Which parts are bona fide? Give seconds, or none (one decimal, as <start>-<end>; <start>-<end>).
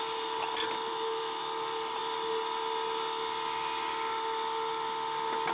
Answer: 0.0-0.9; 1.4-5.5